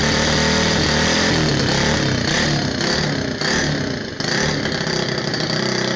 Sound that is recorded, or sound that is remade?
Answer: recorded